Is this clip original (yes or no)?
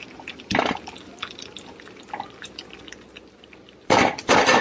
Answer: no